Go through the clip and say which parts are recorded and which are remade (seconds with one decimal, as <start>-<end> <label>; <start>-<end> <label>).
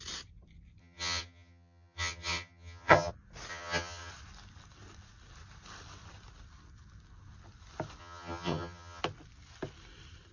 0.0-0.8 recorded; 0.8-3.1 remade; 3.1-3.5 recorded; 3.5-4.1 remade; 4.1-8.0 recorded; 8.0-9.0 remade; 9.0-10.3 recorded